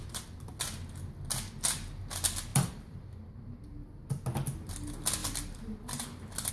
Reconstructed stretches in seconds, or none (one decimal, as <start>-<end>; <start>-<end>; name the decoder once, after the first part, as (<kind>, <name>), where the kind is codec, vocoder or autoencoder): none